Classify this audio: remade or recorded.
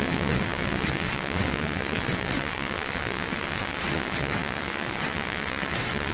remade